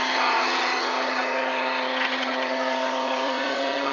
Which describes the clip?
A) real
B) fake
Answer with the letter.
B